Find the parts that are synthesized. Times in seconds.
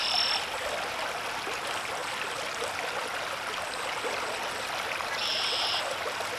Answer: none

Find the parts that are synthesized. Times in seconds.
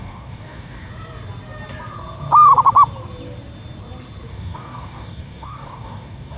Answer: 0.0-0.9; 4.3-6.4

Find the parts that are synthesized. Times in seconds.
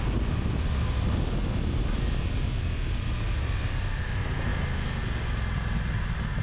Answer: none